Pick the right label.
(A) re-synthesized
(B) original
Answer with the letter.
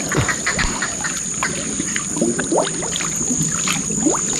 B